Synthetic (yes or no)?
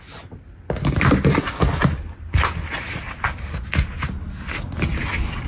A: no